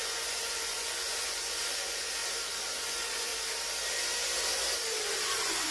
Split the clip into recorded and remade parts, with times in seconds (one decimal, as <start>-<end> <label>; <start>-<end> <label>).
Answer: 0.0-2.2 remade; 2.2-2.8 recorded; 2.8-3.3 remade; 3.3-5.2 recorded; 5.2-5.7 remade